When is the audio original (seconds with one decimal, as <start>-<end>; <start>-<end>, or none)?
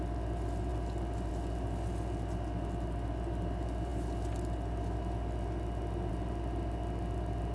0.0-7.5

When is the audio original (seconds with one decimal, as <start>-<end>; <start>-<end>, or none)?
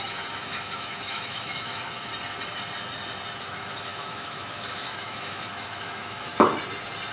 2.1-3.4; 6.3-7.1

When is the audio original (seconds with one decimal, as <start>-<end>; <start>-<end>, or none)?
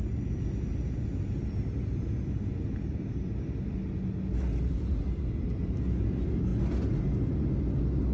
0.0-8.1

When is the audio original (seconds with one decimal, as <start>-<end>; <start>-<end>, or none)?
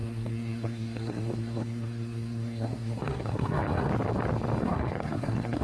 3.9-4.6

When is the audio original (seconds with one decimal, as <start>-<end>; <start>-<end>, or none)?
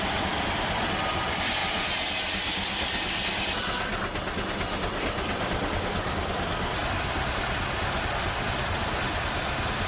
0.0-9.9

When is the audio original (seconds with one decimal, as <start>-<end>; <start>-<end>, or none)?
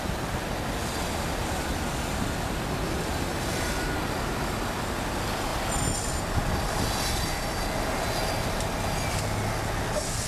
0.0-10.3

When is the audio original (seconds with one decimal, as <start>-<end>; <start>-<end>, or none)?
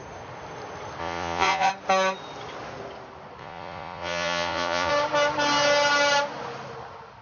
0.0-1.0; 1.7-3.4; 4.9-7.2